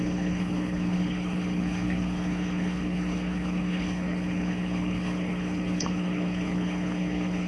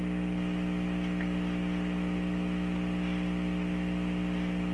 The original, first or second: second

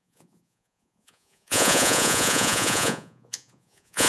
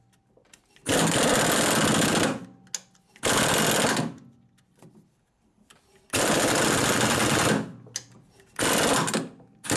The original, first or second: second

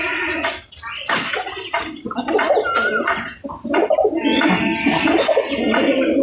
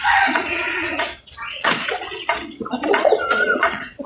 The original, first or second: first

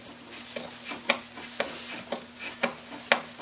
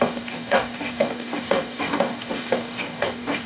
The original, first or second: first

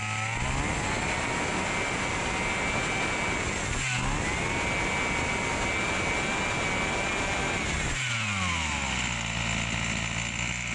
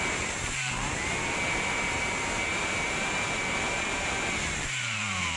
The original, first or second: first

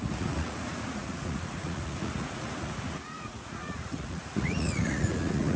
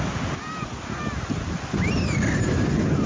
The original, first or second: second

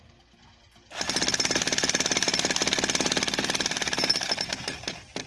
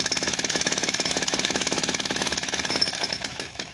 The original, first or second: first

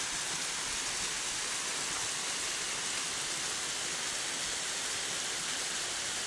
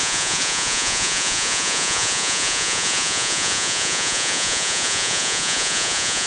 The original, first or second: first